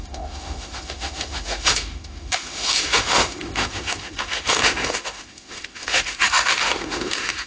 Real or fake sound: fake